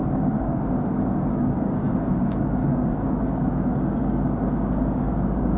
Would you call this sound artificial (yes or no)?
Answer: yes